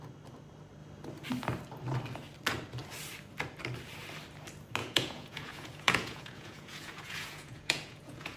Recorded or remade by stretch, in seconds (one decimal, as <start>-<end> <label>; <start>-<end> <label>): 0.0-4.8 recorded; 4.8-8.4 remade